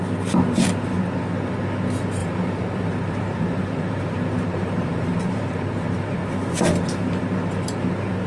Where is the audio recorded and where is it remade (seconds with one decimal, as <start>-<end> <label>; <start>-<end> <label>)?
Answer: 0.0-2.2 recorded; 2.2-7.2 remade; 7.2-8.3 recorded